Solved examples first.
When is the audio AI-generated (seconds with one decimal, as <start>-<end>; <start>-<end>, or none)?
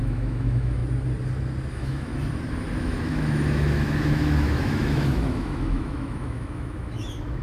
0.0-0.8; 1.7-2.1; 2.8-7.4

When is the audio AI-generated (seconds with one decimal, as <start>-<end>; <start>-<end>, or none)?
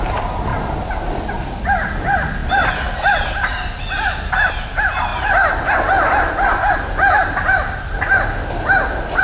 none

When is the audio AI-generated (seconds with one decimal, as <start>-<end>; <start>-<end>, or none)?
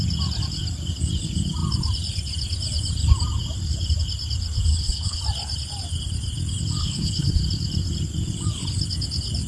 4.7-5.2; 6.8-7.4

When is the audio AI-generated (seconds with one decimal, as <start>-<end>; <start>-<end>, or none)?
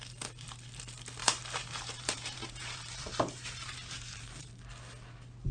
1.2-4.5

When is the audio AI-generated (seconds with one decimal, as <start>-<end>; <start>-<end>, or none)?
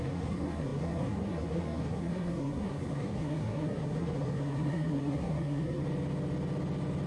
0.0-5.8